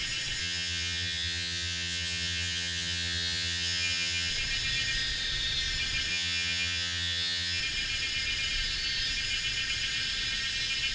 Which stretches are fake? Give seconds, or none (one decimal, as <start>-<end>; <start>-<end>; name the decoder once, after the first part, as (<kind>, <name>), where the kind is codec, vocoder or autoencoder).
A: 0.4-4.3 (vocoder, HiFi-GAN); 6.1-7.6